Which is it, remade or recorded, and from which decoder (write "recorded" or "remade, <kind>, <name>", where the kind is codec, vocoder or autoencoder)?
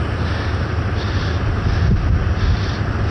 recorded